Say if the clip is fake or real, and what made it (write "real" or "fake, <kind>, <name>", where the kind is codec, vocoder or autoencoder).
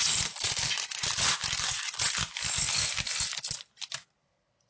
real